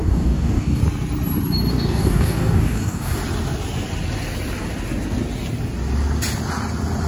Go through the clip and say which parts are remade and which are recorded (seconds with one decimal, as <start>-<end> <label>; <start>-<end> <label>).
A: 0.0-0.8 remade; 0.8-1.7 recorded; 1.7-3.2 remade; 3.2-7.1 recorded